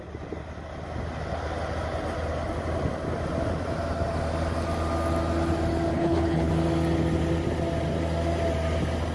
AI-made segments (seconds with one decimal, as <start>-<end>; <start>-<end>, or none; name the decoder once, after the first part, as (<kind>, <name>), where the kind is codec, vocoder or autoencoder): 5.9-6.5 (codec, HILCodec)